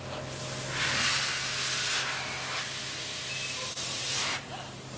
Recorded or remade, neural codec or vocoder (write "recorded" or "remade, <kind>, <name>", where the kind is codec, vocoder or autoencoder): recorded